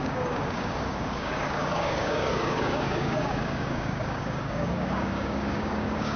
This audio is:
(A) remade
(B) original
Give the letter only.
A